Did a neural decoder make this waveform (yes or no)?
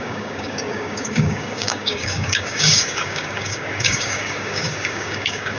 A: yes